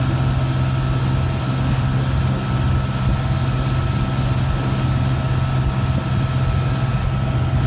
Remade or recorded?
recorded